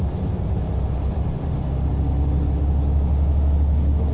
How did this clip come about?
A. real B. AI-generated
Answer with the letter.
A